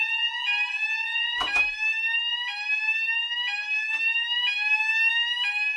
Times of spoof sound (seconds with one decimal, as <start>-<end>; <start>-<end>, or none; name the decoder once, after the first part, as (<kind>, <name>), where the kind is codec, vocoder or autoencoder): 0.7-1.6 (vocoder, BigVGAN v2)